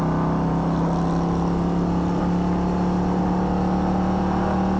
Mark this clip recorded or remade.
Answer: recorded